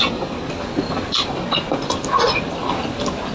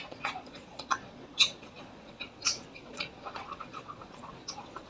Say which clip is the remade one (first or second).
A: second